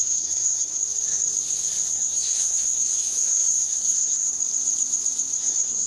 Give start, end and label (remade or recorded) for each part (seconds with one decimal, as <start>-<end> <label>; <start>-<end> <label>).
0.0-0.8 remade; 0.8-1.9 recorded; 1.9-4.3 remade; 4.3-5.5 recorded; 5.5-5.9 remade